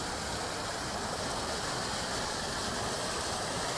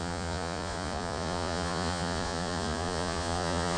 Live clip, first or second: first